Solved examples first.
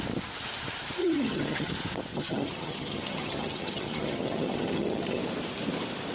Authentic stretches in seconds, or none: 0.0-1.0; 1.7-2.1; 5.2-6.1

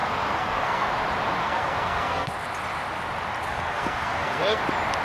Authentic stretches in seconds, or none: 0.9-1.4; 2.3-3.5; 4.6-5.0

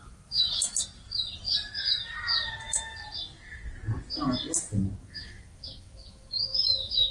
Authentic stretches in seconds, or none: 0.7-5.0

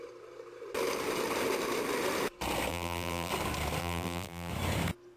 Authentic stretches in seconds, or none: 0.0-2.7; 3.3-3.8; 4.5-5.2

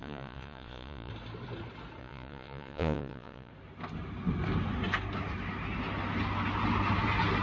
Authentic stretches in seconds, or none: 1.1-2.0; 3.5-7.4